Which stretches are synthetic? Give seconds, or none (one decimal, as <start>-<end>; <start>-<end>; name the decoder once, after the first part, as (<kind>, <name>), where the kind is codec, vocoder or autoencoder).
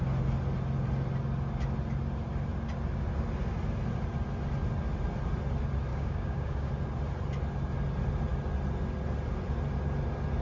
5.9-6.7 (codec, DAC)